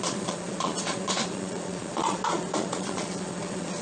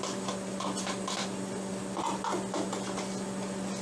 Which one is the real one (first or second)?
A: second